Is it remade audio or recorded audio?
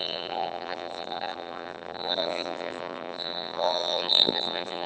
remade